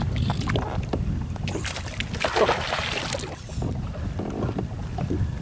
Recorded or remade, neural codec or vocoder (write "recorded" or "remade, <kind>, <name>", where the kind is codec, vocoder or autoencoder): recorded